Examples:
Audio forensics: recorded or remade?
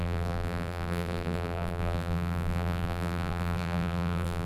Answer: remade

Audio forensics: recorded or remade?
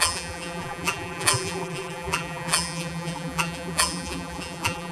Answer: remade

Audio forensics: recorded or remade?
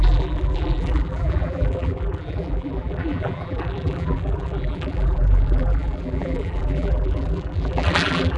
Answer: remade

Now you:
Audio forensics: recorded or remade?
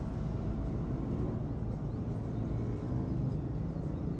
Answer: recorded